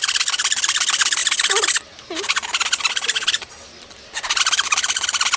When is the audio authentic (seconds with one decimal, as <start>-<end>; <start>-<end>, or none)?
0.0-5.4